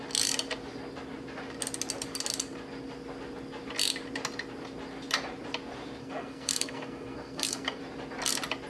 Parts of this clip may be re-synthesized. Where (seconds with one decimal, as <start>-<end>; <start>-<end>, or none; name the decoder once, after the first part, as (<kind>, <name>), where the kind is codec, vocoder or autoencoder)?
6.0-7.8 (codec, SNAC)